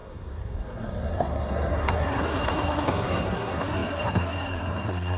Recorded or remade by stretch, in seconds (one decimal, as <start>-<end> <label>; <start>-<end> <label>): 0.0-5.2 remade